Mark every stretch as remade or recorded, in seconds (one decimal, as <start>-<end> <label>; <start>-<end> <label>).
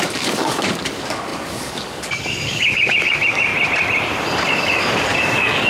0.0-3.5 remade; 3.5-4.5 recorded; 4.5-5.7 remade